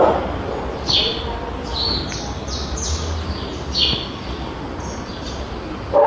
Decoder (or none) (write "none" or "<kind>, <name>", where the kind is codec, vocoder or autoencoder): none